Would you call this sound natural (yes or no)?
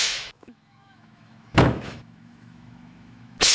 no